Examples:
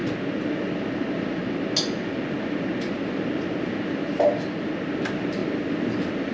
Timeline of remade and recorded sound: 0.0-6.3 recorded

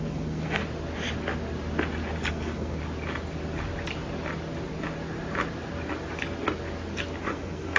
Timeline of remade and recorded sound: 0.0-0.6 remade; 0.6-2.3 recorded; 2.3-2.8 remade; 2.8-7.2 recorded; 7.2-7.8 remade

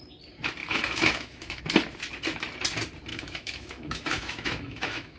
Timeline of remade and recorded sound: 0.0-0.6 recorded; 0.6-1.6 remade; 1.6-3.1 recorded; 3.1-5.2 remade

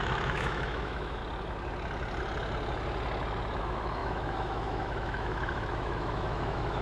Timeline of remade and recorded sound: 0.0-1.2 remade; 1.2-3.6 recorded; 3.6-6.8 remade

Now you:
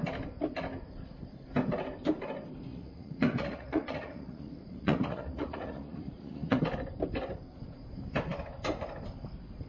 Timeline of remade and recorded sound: 0.0-2.7 recorded; 2.7-6.6 remade; 6.6-9.7 recorded